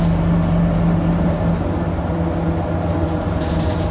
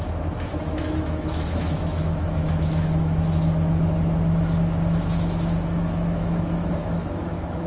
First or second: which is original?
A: first